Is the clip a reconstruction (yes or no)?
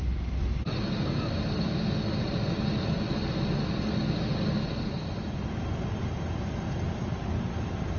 no